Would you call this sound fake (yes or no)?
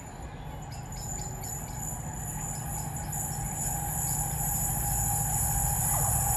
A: no